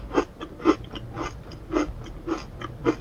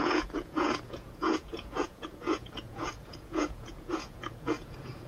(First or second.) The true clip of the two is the first